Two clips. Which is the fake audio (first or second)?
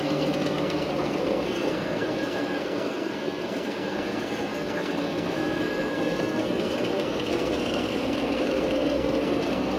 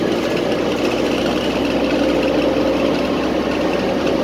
first